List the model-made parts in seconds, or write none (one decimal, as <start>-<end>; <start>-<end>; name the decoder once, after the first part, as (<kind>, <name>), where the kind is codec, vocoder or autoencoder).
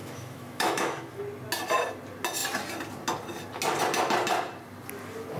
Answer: 0.0-1.2 (autoencoder, DAC-VAE)